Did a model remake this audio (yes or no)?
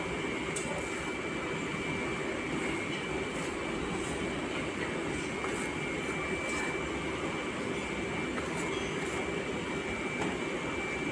no